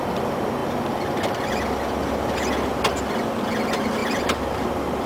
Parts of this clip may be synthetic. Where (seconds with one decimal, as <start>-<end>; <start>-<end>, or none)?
4.0-5.1